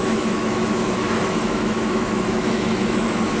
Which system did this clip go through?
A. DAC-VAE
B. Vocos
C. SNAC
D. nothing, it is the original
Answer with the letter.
A